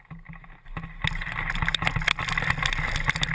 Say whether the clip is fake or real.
real